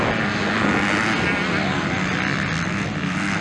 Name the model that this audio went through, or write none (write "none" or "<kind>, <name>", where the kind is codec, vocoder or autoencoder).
none